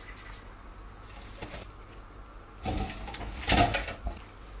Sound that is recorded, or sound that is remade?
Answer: recorded